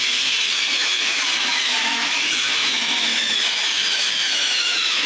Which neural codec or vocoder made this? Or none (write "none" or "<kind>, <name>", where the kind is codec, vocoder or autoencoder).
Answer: autoencoder, DAC-VAE